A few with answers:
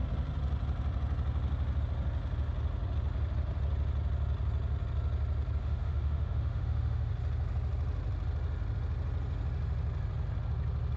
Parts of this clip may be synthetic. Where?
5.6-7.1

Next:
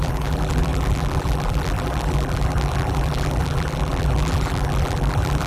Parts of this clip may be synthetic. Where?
0.0-5.5

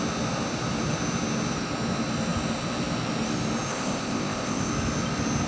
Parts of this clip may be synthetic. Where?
3.7-4.7